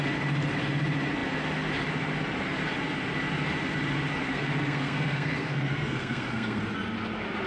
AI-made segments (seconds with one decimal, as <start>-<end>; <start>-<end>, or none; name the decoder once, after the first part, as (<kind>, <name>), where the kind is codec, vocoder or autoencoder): 4.3-6.6 (codec, SNAC)